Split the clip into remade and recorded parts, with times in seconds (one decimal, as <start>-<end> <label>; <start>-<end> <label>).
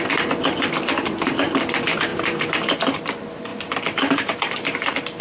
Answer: 0.0-3.5 remade; 3.5-4.1 recorded; 4.1-5.2 remade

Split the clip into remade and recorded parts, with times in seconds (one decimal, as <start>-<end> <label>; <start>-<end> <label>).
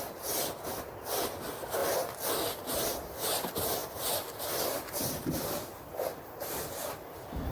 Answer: 0.0-3.8 recorded; 3.8-6.3 remade; 6.3-7.5 recorded